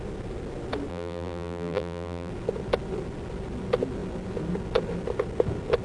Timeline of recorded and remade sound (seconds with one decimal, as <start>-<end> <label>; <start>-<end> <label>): 0.0-0.9 recorded; 0.9-2.3 remade; 2.3-5.8 recorded